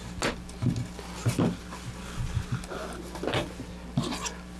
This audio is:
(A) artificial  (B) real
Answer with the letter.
B